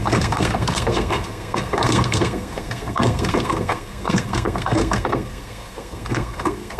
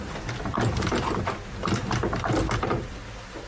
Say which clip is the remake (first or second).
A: first